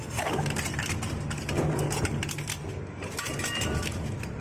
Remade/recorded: recorded